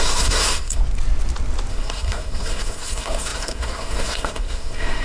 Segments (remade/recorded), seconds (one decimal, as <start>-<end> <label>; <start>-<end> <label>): 0.0-0.8 remade; 0.8-1.7 recorded; 1.7-5.0 remade